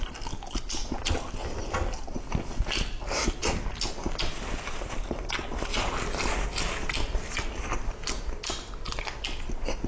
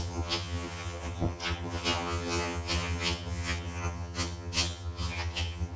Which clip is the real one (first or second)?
first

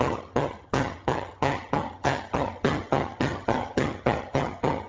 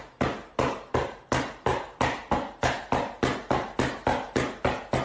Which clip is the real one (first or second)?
second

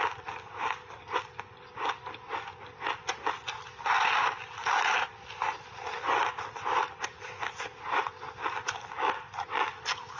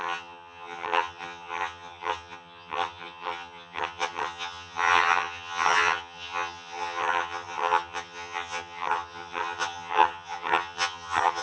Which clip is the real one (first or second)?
first